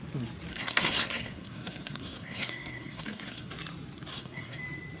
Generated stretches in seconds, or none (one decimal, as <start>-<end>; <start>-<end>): 0.5-3.5; 4.1-4.6